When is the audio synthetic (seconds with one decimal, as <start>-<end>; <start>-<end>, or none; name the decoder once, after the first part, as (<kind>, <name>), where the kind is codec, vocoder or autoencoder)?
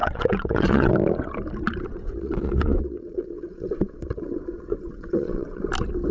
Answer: 0.0-0.9 (vocoder, WaveNeXt); 1.9-5.6